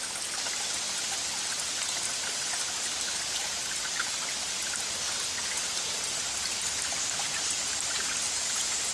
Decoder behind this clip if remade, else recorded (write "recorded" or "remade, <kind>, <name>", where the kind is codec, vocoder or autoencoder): recorded